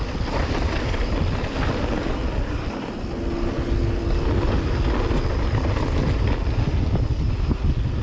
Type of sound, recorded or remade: recorded